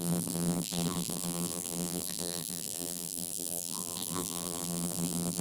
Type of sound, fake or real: fake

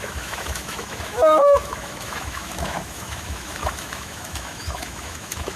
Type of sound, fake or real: fake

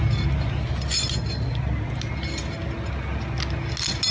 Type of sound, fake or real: real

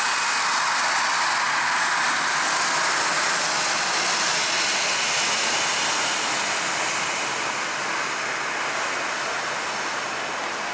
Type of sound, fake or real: real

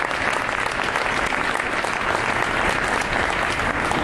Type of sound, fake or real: real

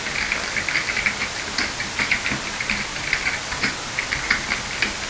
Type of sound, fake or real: real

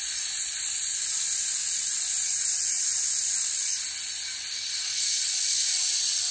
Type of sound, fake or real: real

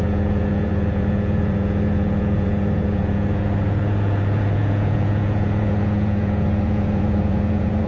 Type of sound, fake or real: fake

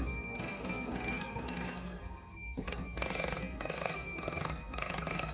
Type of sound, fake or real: fake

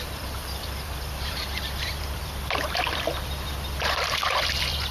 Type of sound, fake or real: fake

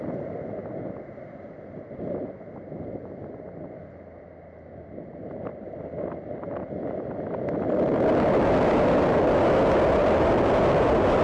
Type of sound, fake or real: real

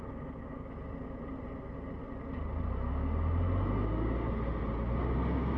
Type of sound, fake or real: real